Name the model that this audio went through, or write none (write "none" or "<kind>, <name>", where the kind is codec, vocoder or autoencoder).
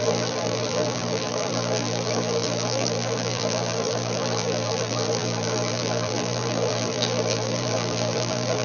vocoder, BigVGAN v2